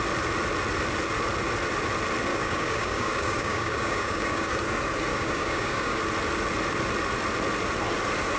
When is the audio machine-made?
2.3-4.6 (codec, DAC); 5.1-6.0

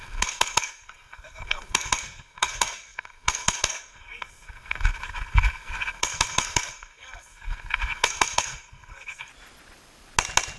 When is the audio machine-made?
0.0-9.3 (codec, SNAC)